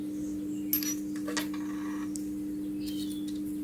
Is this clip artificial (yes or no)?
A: no